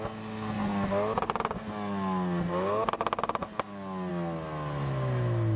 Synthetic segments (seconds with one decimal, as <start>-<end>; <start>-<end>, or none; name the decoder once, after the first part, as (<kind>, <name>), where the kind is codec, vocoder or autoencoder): none